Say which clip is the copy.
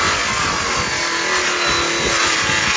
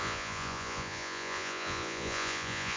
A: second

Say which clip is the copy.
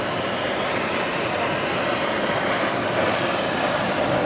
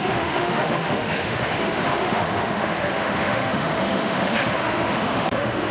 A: second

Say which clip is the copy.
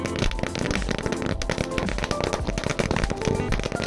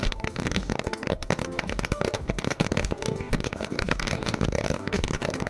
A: second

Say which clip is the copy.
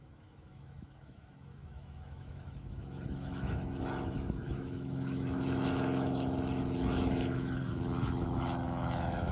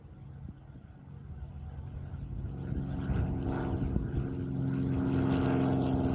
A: first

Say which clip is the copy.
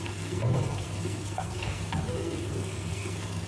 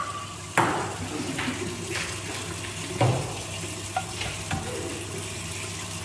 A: first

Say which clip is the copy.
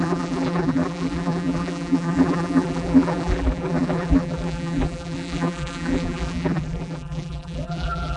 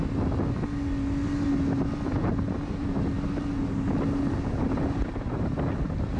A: first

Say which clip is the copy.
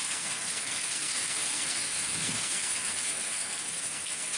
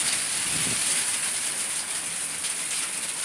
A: first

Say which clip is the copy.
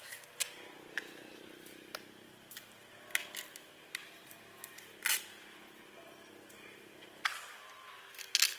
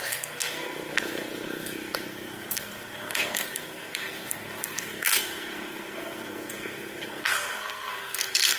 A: second